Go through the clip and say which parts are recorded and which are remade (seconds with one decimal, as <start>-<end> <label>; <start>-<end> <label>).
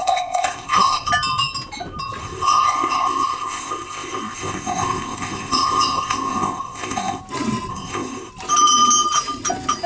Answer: 0.0-1.1 remade; 1.1-2.2 recorded; 2.2-7.2 remade; 7.2-7.7 recorded; 7.7-8.3 remade; 8.3-9.9 recorded